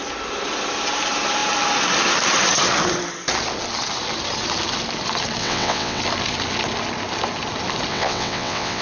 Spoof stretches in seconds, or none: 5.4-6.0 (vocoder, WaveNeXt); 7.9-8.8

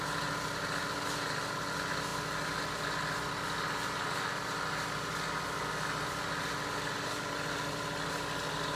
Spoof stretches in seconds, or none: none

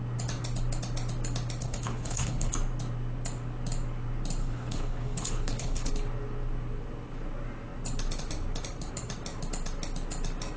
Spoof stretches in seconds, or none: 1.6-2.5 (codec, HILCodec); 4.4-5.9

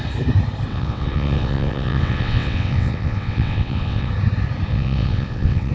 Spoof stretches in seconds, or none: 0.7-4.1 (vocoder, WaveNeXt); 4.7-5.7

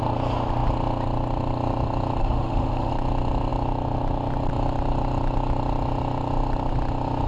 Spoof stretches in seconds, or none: 2.2-2.9 (autoencoder, DAC-VAE)